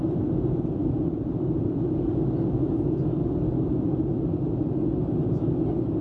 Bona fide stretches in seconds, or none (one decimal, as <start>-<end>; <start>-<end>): 0.0-6.0